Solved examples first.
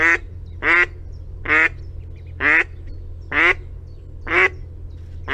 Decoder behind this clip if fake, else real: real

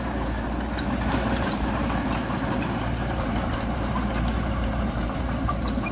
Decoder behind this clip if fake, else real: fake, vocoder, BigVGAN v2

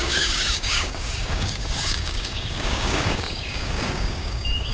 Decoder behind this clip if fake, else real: fake, codec, DAC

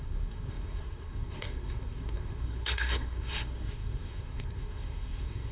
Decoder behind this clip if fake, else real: fake, codec, SNAC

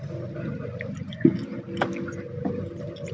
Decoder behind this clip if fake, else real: real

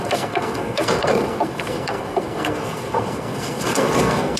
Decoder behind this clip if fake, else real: fake, codec, SNAC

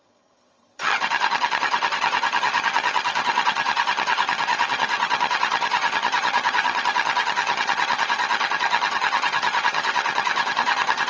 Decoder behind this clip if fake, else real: fake, vocoder, HiFi-GAN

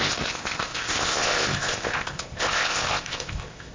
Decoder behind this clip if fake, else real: fake, codec, ZipCodec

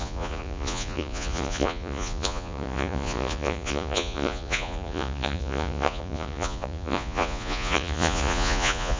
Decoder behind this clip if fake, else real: fake, vocoder, Vocos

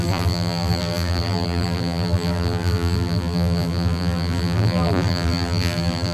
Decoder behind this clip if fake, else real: fake, vocoder, BigVGAN v2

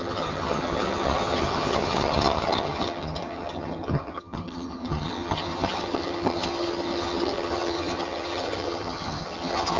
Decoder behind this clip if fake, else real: fake, vocoder, HiFi-GAN